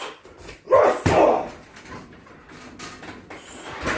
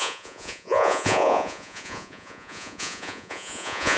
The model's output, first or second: second